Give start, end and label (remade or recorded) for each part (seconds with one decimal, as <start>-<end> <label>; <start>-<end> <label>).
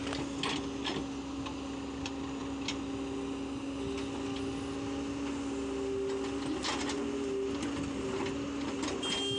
0.0-9.4 recorded